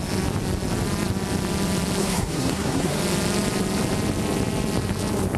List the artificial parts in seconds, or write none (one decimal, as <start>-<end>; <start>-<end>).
2.0-3.0

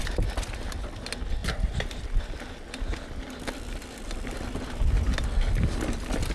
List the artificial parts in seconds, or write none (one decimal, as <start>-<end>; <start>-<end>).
none

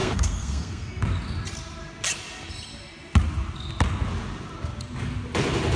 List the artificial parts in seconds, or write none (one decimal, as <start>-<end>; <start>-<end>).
0.0-0.9

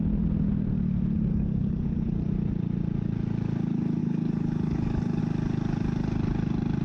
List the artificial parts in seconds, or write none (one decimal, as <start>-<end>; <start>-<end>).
1.3-2.3; 4.0-5.2

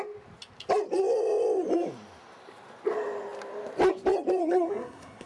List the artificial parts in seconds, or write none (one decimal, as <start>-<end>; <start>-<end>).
4.4-5.3

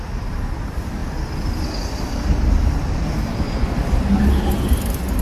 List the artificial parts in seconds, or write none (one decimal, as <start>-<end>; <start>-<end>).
none

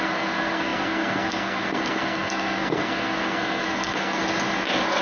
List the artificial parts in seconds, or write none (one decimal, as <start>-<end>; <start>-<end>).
0.0-4.2